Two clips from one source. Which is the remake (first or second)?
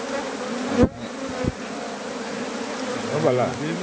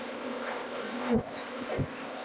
second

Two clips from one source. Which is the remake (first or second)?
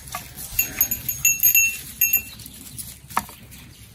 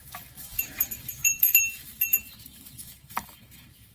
second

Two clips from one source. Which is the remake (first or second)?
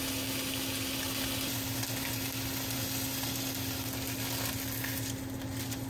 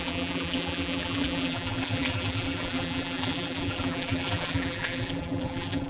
second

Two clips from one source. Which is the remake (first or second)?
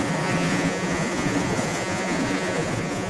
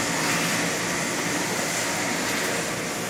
first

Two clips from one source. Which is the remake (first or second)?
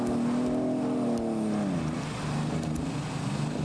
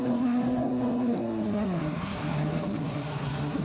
second